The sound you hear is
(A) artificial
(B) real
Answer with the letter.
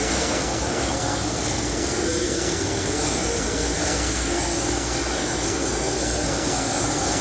A